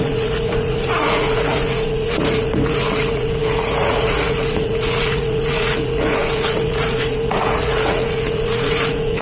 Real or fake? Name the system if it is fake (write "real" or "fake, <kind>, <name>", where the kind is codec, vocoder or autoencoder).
fake, vocoder, Vocos